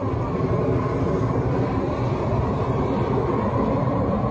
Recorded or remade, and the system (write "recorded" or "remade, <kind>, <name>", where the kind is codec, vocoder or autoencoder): recorded